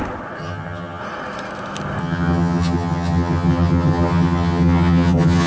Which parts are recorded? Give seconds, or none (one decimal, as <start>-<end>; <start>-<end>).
0.0-0.4; 1.0-2.0